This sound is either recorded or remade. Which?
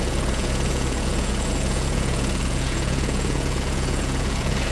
remade